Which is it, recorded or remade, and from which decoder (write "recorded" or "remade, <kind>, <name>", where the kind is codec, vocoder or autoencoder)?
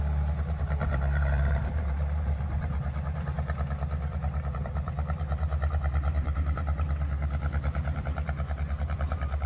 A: remade, vocoder, BigVGAN v2